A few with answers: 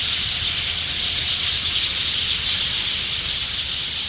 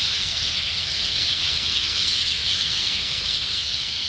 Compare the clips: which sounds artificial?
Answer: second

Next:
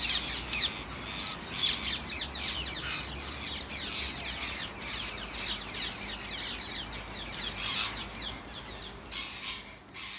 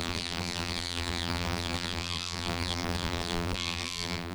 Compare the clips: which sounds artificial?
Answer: second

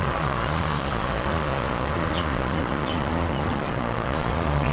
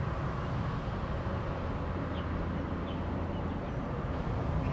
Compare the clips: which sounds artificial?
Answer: first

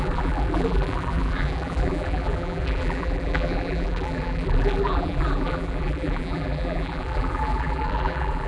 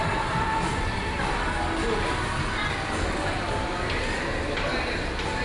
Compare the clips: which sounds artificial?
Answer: first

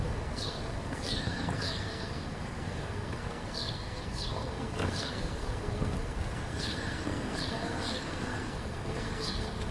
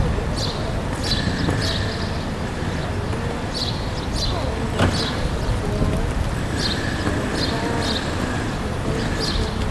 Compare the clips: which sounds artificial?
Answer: first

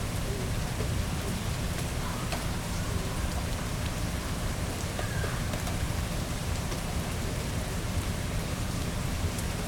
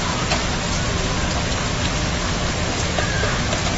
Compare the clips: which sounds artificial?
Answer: first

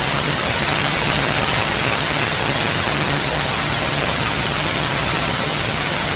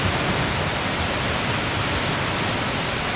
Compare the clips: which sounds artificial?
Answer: first